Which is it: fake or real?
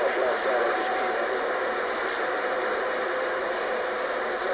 fake